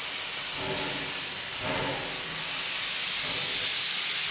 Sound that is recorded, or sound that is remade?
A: recorded